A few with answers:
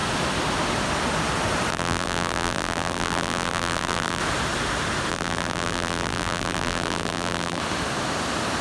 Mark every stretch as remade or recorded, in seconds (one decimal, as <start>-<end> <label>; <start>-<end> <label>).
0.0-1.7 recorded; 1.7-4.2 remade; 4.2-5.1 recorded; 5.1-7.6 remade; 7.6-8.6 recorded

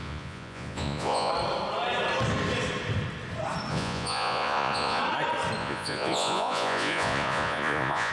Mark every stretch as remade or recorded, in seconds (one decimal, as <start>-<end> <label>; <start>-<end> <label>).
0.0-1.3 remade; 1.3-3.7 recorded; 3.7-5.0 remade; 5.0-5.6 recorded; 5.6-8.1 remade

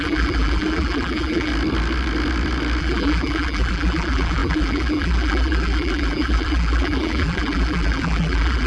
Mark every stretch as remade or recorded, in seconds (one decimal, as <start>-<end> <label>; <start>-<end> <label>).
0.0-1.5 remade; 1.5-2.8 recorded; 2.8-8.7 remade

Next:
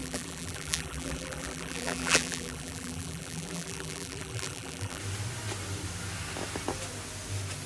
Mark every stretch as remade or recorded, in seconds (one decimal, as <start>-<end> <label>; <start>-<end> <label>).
0.0-5.0 remade; 5.0-7.7 recorded